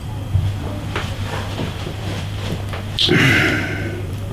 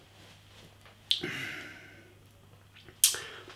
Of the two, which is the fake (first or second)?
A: first